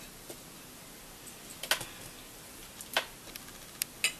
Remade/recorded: recorded